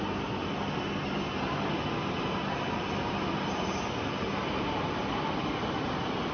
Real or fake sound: real